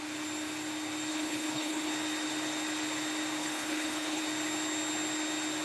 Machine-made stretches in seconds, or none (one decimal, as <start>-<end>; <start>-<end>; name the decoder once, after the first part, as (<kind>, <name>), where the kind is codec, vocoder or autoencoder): 1.1-1.9 (codec, HILCodec); 3.4-4.2